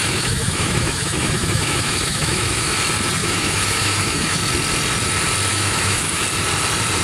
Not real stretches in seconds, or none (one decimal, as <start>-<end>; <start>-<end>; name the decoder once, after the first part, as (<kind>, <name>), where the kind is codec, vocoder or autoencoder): 0.0-2.8 (autoencoder, DAC-VAE); 3.2-4.4; 5.5-6.2